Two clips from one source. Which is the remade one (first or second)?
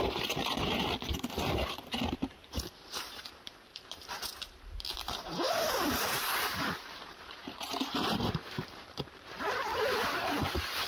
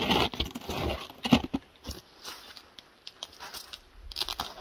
first